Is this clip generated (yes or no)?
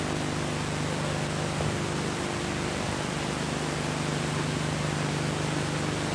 no